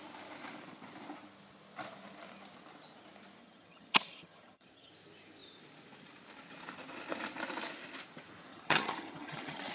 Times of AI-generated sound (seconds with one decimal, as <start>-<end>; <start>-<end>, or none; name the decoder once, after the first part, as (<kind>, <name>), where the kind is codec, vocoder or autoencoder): 3.4-4.9 (vocoder, HiFi-GAN); 8.5-9.7